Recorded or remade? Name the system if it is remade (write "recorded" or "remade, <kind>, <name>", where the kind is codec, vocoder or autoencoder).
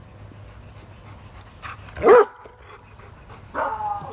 recorded